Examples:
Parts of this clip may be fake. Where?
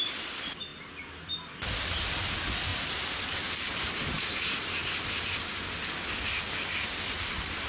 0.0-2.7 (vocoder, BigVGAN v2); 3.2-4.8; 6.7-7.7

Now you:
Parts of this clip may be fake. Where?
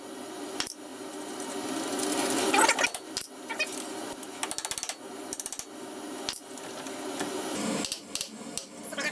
none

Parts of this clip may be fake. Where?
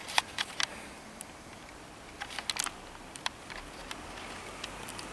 3.1-3.8 (vocoder, BigVGAN v2)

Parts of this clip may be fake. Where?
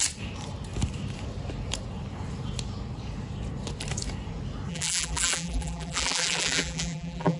4.7-7.4 (vocoder, BigVGAN v2)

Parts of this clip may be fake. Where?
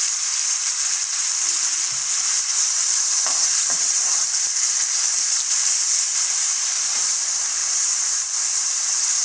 0.0-1.0 (vocoder, BigVGAN v2); 2.3-9.2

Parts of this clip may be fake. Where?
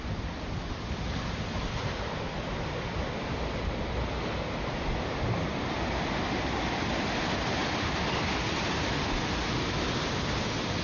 7.6-8.4 (vocoder, BigVGAN v2)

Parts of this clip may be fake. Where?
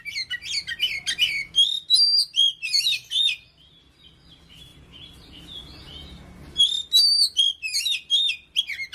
2.4-3.7 (vocoder, BigVGAN v2)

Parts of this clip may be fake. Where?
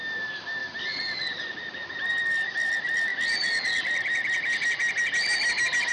0.0-3.1 (vocoder, BigVGAN v2)